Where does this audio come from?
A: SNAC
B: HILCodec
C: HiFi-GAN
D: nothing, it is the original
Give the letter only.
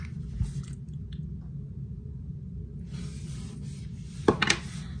D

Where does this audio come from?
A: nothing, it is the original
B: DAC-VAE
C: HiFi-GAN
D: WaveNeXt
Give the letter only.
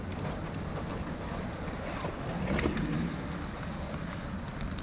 A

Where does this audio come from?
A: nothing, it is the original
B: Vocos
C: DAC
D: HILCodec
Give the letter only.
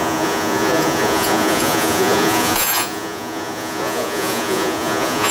B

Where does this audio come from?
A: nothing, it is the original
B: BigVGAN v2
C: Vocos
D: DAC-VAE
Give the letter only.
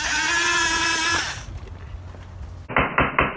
A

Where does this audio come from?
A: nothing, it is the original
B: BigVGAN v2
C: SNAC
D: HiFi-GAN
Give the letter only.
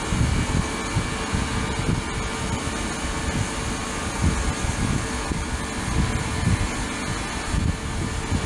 A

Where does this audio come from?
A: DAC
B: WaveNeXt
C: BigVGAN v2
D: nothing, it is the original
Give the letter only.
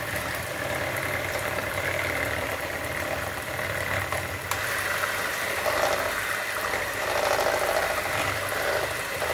C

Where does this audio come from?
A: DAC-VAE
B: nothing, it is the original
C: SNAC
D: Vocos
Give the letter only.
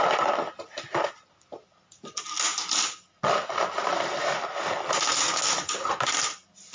B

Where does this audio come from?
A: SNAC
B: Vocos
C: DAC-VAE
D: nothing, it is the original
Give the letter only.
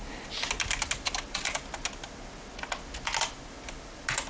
D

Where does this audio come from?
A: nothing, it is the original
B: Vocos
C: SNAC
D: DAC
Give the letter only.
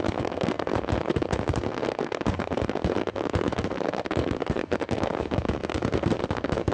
C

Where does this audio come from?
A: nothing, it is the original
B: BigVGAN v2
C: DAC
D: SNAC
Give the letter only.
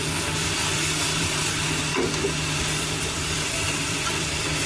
B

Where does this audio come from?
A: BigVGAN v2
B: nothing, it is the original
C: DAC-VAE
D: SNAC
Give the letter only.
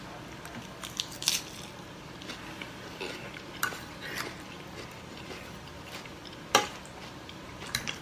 B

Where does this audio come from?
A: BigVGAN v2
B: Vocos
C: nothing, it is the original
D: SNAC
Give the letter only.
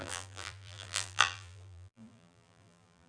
A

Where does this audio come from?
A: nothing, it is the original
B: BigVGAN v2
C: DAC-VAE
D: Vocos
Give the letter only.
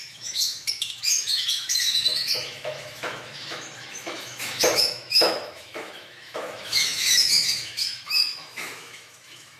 C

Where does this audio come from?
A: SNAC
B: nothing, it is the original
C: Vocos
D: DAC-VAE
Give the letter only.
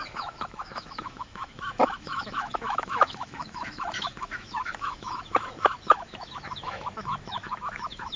D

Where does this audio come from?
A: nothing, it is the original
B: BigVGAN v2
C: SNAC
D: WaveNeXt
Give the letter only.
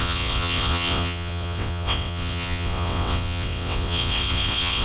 D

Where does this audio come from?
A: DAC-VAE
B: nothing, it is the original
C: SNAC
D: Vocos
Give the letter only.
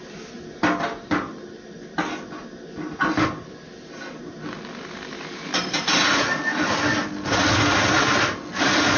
B